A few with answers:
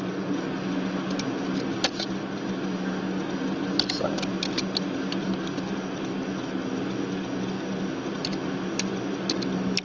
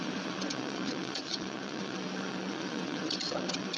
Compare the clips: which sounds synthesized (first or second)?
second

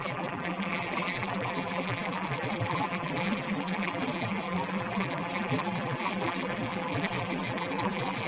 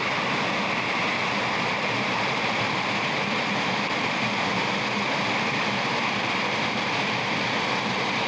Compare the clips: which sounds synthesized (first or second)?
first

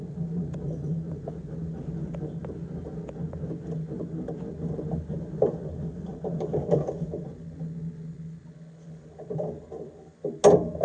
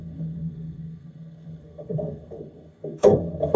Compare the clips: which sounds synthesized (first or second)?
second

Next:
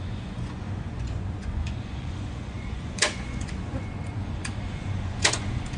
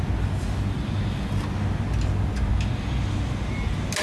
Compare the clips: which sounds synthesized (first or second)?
first